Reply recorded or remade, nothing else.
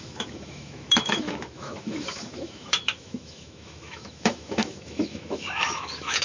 remade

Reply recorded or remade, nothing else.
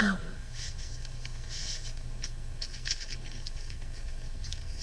remade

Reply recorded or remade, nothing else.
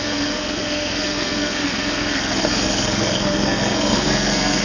remade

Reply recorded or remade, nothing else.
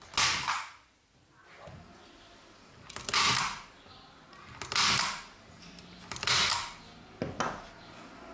recorded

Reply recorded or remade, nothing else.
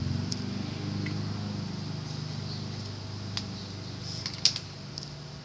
recorded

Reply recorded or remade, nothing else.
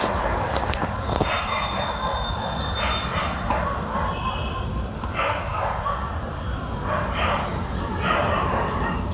recorded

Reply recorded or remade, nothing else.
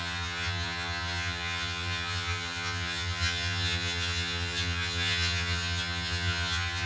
remade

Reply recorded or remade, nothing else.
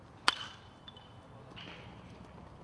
recorded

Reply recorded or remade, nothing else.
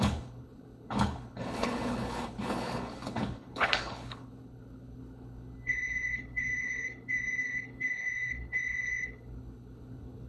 remade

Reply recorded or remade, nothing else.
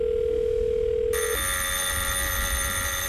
recorded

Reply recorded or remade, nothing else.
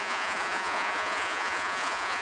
remade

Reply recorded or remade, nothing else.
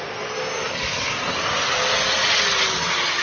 recorded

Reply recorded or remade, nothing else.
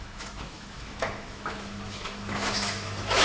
remade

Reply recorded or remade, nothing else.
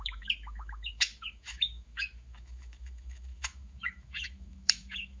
remade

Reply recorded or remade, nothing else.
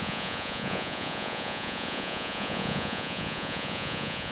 remade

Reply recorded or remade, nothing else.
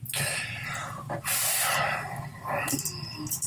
recorded